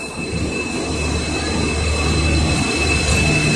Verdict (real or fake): real